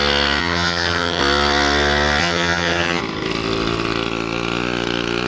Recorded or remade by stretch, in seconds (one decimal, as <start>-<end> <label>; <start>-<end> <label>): 0.0-0.4 recorded; 0.4-1.2 remade; 1.2-2.2 recorded; 2.2-3.0 remade; 3.0-5.3 recorded